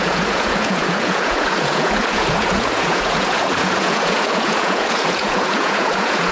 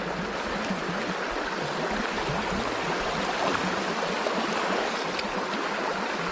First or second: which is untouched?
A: second